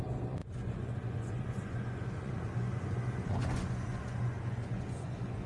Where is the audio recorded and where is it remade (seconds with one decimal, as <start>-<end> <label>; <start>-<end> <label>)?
0.0-5.5 remade